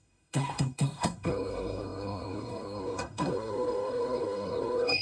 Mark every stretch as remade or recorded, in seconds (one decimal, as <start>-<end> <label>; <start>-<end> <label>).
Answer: 0.0-5.0 remade

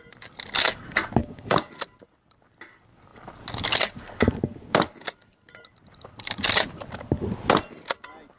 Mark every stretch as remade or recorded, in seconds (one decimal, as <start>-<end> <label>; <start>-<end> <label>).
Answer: 0.0-1.2 recorded; 1.2-1.7 remade; 1.7-8.4 recorded

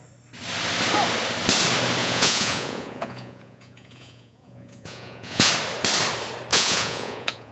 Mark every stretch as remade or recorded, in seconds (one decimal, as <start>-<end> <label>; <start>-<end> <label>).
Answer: 0.0-2.0 recorded; 2.0-5.5 remade; 5.5-6.5 recorded; 6.5-7.5 remade

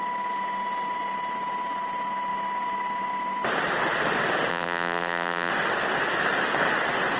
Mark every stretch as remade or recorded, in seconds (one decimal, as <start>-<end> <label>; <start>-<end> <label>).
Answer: 0.0-4.5 recorded; 4.5-5.5 remade; 5.5-7.2 recorded

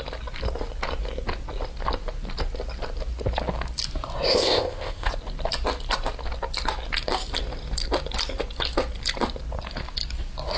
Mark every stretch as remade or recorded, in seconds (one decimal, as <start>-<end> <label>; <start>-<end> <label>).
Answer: 0.0-4.3 recorded; 4.3-5.1 remade; 5.1-10.6 recorded

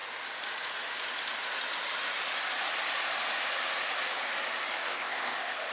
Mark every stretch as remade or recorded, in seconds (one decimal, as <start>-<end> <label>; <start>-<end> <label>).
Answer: 0.0-4.9 recorded; 4.9-5.7 remade

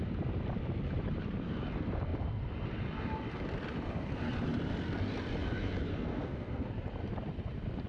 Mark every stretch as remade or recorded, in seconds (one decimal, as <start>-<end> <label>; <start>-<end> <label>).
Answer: 0.0-5.9 recorded; 5.9-6.7 remade; 6.7-7.9 recorded